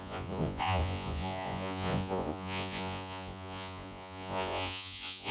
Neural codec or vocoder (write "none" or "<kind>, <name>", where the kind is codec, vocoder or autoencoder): vocoder, Vocos